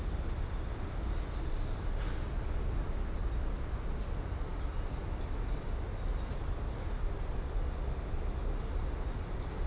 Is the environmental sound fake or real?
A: real